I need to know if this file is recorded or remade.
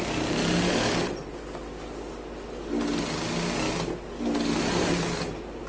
recorded